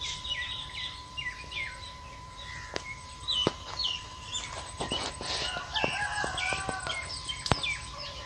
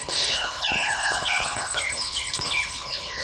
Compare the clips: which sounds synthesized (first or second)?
second